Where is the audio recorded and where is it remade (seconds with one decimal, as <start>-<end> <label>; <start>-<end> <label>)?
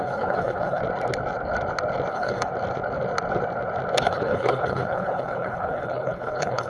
0.0-0.8 remade; 0.8-2.1 recorded; 2.1-2.5 remade; 2.5-4.0 recorded; 4.0-6.7 remade